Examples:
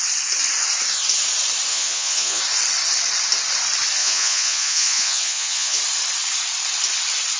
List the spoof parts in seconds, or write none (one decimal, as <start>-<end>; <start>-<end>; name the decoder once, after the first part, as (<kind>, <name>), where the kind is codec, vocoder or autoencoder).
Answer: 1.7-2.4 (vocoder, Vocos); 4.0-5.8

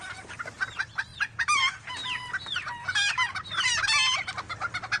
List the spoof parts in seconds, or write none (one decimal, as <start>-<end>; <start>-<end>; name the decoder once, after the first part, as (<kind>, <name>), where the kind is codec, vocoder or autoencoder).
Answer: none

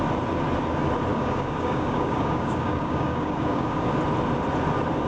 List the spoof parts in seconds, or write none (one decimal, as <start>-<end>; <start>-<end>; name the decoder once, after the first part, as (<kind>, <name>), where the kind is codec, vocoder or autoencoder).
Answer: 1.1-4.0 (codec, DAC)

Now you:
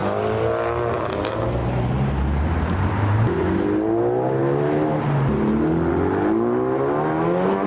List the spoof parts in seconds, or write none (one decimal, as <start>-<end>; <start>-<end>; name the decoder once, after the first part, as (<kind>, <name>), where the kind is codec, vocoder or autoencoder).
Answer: 1.6-3.4 (vocoder, BigVGAN v2)